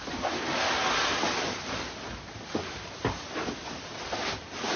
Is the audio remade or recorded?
recorded